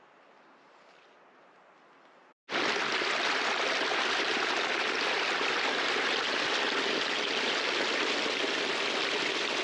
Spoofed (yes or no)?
no